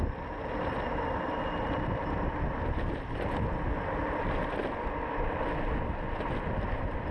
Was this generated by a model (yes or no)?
no